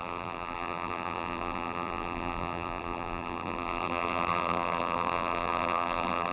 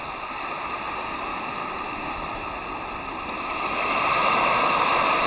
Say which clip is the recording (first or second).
second